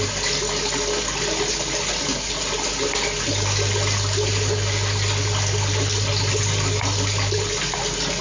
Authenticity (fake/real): real